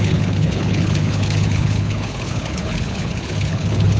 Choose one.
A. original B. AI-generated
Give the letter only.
B